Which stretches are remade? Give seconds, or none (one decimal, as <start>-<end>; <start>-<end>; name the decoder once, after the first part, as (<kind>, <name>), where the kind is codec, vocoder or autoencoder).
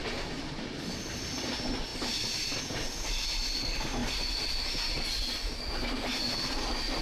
none